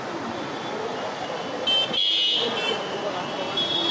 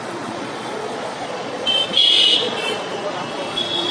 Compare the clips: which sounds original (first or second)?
first